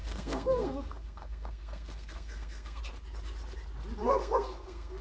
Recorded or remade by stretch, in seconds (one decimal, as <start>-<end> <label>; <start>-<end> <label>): 0.0-2.8 remade; 2.8-4.0 recorded; 4.0-5.0 remade